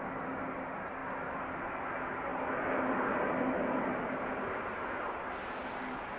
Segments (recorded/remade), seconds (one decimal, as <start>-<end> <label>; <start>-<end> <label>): 0.0-6.2 recorded

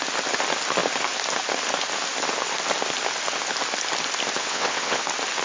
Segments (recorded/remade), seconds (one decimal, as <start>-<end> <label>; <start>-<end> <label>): 0.0-4.4 recorded; 4.4-5.0 remade; 5.0-5.4 recorded

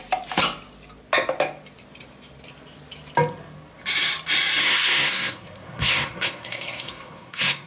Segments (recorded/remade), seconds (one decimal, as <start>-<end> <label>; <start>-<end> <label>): 0.0-4.6 recorded; 4.6-7.7 remade

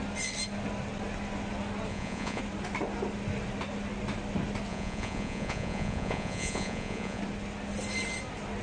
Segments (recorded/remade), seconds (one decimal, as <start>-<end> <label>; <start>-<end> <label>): 0.0-1.9 recorded; 1.9-2.4 remade; 2.4-4.7 recorded; 4.7-7.2 remade; 7.2-8.6 recorded

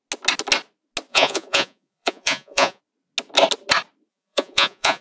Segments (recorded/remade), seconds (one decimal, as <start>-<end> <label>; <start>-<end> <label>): 0.0-1.1 recorded; 1.1-2.8 remade; 2.8-4.1 recorded; 4.1-5.0 remade

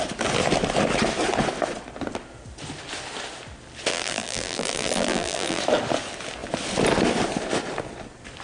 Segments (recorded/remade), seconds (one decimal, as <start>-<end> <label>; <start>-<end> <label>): 0.0-3.9 recorded; 3.9-5.6 remade; 5.6-8.4 recorded

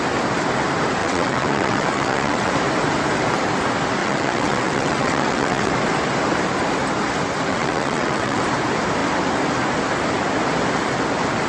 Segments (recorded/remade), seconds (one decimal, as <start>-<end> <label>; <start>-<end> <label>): 0.0-1.0 recorded; 1.0-2.5 remade; 2.5-4.0 recorded; 4.0-5.7 remade; 5.7-7.5 recorded; 7.5-8.4 remade; 8.4-11.5 recorded